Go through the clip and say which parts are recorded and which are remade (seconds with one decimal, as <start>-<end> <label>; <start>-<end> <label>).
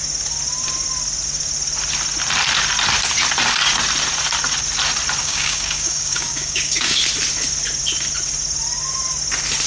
0.0-5.2 recorded; 5.2-7.0 remade; 7.0-9.7 recorded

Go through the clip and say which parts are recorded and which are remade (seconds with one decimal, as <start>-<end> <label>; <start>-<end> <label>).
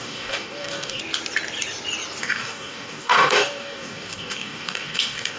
0.0-1.0 remade; 1.0-2.2 recorded; 2.2-5.4 remade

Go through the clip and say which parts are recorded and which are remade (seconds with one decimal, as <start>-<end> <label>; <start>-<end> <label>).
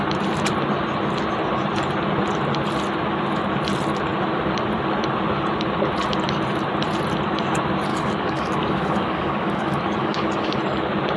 0.0-7.9 recorded; 7.9-10.6 remade; 10.6-11.2 recorded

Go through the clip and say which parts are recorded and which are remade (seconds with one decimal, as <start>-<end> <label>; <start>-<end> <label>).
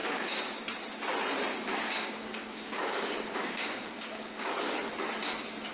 0.0-0.6 remade; 0.6-1.5 recorded; 1.5-4.5 remade; 4.5-5.7 recorded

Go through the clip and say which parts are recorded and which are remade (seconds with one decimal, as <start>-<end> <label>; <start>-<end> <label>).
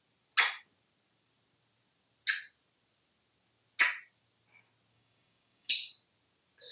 0.0-4.9 recorded; 4.9-5.7 remade; 5.7-6.7 recorded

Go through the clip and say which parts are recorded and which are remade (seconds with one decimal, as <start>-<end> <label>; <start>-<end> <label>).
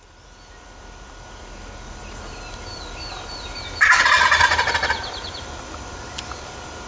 0.0-6.9 recorded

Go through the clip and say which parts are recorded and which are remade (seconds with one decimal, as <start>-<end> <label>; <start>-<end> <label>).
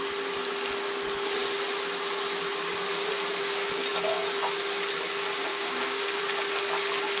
0.0-5.5 recorded; 5.5-6.2 remade; 6.2-7.2 recorded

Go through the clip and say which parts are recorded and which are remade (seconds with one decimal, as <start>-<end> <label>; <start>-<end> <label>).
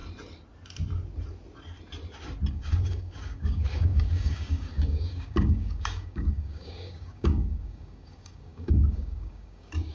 0.0-2.5 recorded; 2.5-9.9 remade